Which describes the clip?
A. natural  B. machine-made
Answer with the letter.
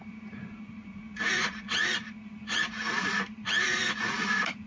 B